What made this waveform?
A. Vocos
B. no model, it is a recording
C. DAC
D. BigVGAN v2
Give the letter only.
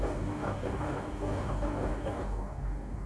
C